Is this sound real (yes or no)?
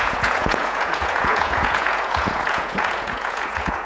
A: no